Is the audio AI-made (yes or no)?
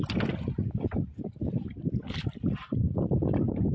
no